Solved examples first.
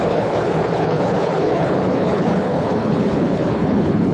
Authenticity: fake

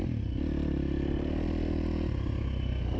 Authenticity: real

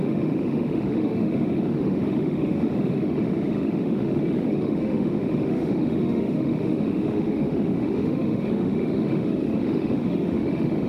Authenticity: fake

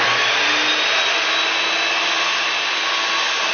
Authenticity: real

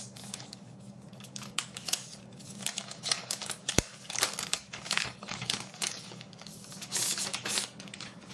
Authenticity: fake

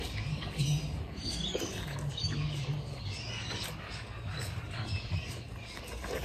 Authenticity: fake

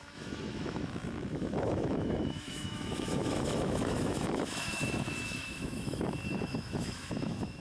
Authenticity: fake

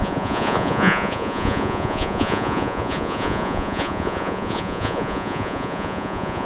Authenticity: fake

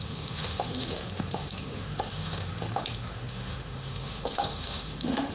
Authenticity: fake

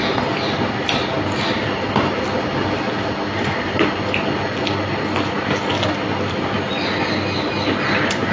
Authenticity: real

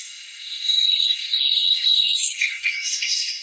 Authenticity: fake